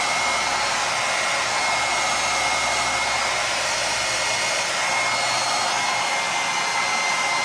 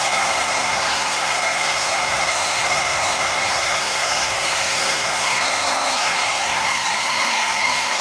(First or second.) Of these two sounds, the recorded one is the first